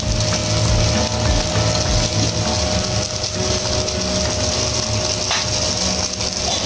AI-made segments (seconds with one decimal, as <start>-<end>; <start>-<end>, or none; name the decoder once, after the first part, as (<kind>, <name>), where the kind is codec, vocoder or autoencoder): none